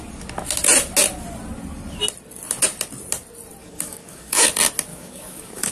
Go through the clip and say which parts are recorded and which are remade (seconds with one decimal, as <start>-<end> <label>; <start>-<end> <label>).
0.0-3.6 recorded; 3.6-4.5 remade; 4.5-4.9 recorded; 4.9-5.7 remade